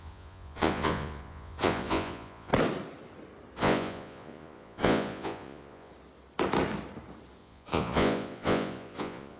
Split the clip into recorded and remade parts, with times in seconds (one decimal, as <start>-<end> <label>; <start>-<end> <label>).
0.0-2.5 remade; 2.5-3.6 recorded; 3.6-5.9 remade; 5.9-7.4 recorded; 7.4-9.4 remade